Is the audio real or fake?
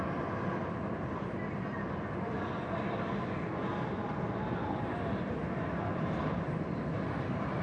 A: real